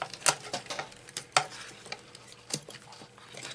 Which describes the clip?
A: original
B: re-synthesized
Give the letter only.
A